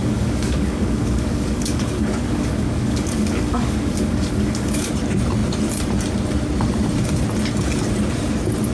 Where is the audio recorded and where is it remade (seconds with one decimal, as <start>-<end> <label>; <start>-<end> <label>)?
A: 0.0-4.9 remade; 4.9-8.7 recorded